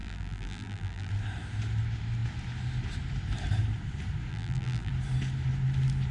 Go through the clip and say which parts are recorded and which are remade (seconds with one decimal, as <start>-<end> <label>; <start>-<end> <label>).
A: 0.0-1.1 remade; 1.1-4.3 recorded; 4.3-4.9 remade; 4.9-6.1 recorded